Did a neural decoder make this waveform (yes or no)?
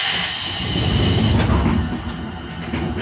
no